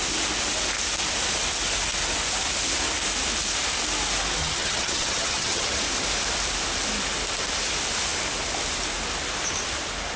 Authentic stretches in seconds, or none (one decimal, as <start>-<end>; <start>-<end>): 0.0-4.4; 5.8-10.2